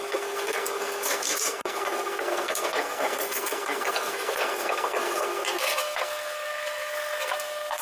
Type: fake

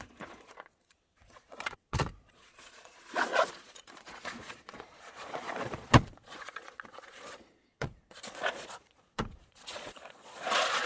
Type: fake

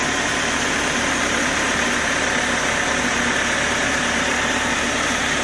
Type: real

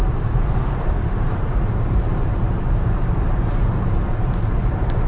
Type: fake